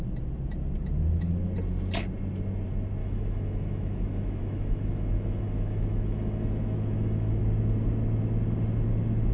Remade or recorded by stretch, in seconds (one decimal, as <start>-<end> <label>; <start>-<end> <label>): 0.0-3.0 recorded; 3.0-7.4 remade; 7.4-9.3 recorded